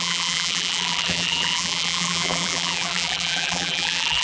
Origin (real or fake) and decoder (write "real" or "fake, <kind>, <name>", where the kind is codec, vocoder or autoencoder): fake, vocoder, BigVGAN v2